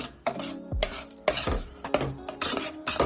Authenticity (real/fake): real